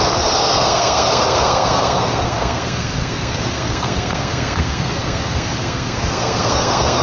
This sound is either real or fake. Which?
fake